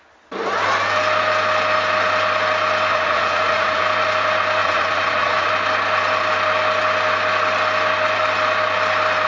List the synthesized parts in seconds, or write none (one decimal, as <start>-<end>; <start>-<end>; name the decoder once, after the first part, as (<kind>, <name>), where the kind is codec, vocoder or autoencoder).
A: 2.9-3.8 (vocoder, Vocos); 4.6-5.5